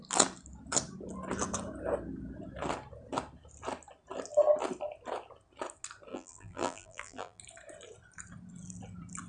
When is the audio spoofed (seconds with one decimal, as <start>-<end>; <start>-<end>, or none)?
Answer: 6.1-7.4